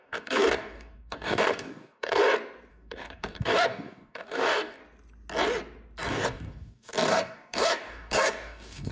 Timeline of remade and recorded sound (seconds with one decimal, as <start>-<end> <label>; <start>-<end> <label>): 0.0-2.2 remade; 2.2-2.7 recorded; 2.7-4.8 remade; 4.8-6.1 recorded; 6.1-8.9 remade